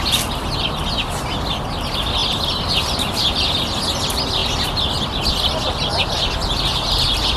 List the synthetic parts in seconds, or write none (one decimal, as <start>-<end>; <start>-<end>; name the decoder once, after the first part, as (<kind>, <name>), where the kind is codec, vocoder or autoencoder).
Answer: none